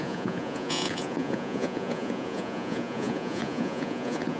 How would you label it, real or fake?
fake